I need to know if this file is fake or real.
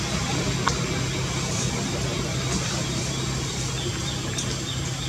real